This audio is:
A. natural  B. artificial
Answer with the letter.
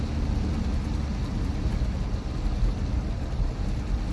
A